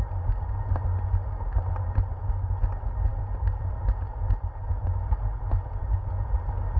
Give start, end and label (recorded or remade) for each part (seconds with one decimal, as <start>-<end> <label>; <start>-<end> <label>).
0.0-6.8 recorded